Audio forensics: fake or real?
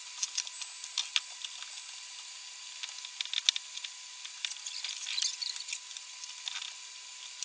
real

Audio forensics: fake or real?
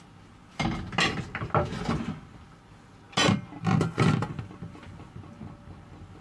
real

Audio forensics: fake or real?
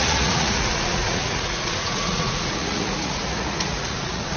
fake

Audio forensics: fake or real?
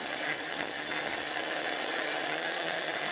fake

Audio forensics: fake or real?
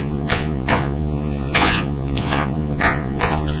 fake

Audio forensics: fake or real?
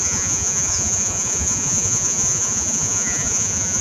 fake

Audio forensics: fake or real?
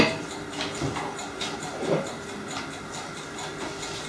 real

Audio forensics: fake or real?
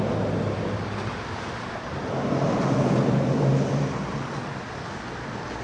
real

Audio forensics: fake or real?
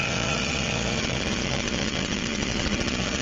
fake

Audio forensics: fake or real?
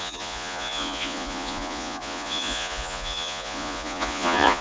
fake